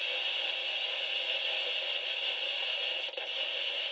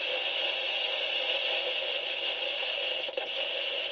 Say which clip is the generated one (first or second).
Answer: second